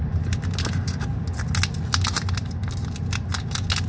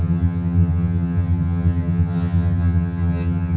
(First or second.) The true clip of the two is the first